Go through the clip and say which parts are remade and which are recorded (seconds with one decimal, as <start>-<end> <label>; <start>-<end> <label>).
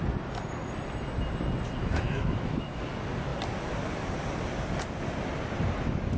0.0-1.8 recorded; 1.8-2.9 remade; 2.9-6.2 recorded